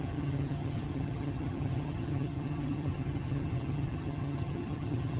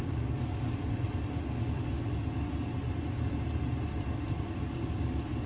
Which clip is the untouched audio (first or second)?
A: second